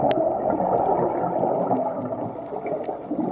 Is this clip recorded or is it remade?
recorded